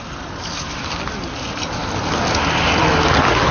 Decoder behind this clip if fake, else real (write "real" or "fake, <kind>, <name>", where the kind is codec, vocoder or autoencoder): real